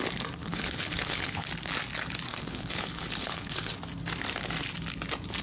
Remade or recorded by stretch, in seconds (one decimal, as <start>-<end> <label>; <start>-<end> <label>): 0.0-0.4 recorded; 0.4-1.5 remade; 1.5-2.3 recorded; 2.3-3.8 remade; 3.8-5.4 recorded